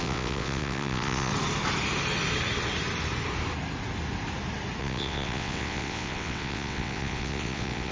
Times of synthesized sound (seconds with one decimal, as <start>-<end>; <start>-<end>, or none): 0.0-1.3; 4.8-7.9